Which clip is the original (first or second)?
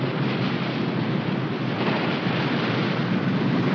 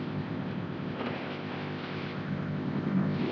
first